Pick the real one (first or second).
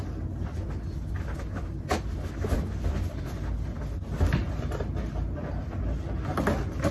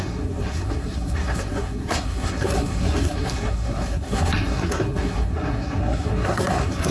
first